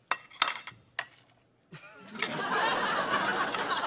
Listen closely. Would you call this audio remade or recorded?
recorded